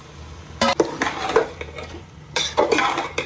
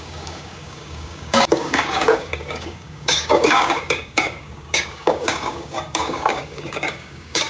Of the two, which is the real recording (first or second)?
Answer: first